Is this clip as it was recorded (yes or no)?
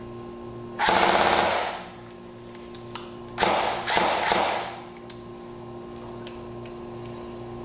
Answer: yes